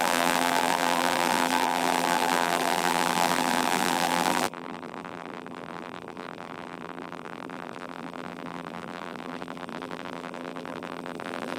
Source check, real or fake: fake